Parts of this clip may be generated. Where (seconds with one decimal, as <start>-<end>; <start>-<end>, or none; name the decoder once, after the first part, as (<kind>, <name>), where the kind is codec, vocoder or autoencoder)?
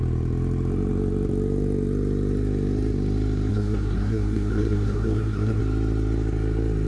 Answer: 3.5-5.6 (codec, SNAC)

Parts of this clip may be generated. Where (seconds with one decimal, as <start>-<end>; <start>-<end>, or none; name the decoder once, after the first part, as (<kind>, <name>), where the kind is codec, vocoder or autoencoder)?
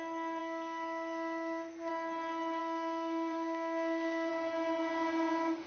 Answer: 0.4-1.9 (codec, SNAC); 2.6-4.3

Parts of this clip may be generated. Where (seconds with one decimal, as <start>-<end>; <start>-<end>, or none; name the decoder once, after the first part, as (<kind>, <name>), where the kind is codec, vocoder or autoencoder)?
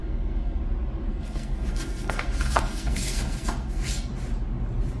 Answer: 0.0-0.6 (codec, SNAC); 1.1-4.1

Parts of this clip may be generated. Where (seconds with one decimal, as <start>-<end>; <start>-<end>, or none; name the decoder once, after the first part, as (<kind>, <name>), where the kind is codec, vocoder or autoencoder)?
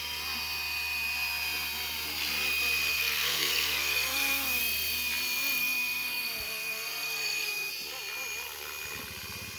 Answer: 2.9-4.6 (codec, SNAC); 5.6-7.7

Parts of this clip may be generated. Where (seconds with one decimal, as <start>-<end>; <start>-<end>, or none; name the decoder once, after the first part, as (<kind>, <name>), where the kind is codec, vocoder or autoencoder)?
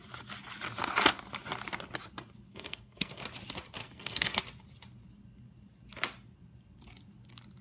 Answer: 2.5-3.2 (codec, SNAC); 3.8-4.4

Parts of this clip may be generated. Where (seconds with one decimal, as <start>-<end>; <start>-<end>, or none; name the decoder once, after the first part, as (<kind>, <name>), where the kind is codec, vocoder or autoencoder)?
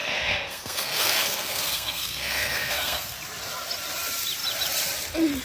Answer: 0.0-3.2 (codec, SNAC)